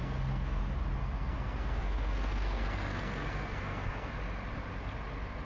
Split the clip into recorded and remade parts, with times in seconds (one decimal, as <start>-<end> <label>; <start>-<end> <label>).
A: 0.0-0.6 remade; 0.6-1.0 recorded; 1.0-4.1 remade; 4.1-5.4 recorded